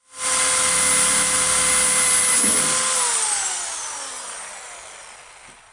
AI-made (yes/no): no